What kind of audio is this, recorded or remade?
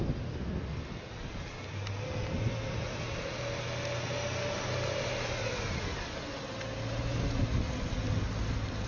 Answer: recorded